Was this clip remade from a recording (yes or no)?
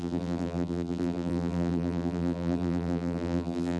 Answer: yes